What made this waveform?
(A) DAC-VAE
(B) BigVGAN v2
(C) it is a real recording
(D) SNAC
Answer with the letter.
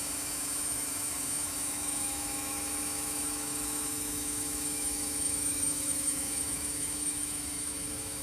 A